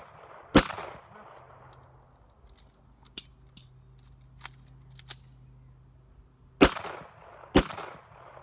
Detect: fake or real real